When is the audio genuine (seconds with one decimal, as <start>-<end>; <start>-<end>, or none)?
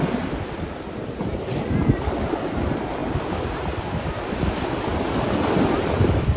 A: 3.0-3.8